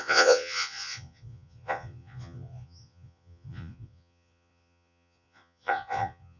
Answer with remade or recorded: remade